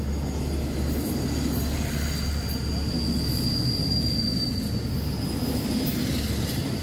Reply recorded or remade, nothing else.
recorded